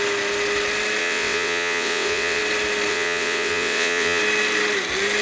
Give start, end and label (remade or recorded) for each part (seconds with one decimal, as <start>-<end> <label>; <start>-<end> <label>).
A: 0.0-1.0 recorded; 1.0-2.4 remade; 2.4-2.9 recorded; 2.9-4.2 remade; 4.2-5.2 recorded

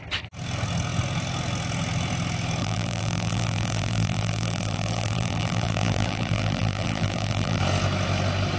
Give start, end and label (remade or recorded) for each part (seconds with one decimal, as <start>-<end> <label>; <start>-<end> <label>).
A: 0.0-2.6 recorded; 2.6-7.6 remade; 7.6-8.6 recorded

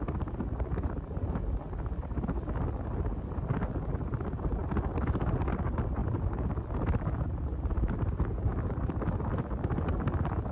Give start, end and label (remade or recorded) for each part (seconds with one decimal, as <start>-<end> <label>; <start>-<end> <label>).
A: 0.0-10.5 recorded

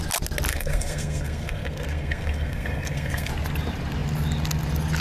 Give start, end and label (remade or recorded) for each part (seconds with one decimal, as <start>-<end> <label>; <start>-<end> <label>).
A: 0.0-0.5 recorded; 0.5-3.3 remade; 3.3-5.0 recorded

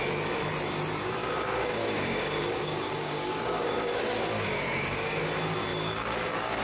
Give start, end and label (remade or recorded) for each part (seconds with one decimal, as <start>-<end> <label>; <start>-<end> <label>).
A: 0.0-1.2 recorded; 1.2-5.2 remade; 5.2-5.7 recorded; 5.7-6.6 remade

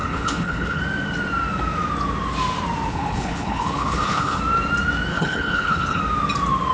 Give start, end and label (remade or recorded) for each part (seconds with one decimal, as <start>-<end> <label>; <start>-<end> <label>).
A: 0.0-0.8 remade; 0.8-2.9 recorded; 2.9-4.4 remade; 4.4-5.1 recorded; 5.1-6.0 remade; 6.0-6.7 recorded

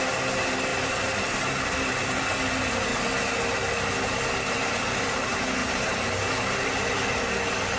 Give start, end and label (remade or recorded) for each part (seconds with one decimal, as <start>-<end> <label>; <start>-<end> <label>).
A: 0.0-0.7 recorded; 0.7-2.2 remade; 2.2-5.6 recorded; 5.6-6.7 remade; 6.7-7.8 recorded

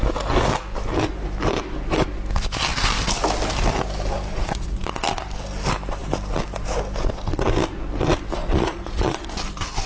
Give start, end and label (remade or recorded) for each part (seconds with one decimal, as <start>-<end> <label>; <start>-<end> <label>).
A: 0.0-4.3 recorded; 4.3-4.9 remade; 4.9-8.4 recorded; 8.4-9.2 remade; 9.2-9.9 recorded